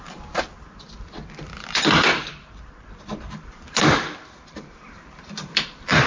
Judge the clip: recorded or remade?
remade